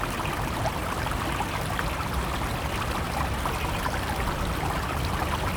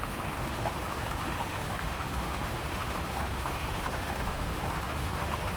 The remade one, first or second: second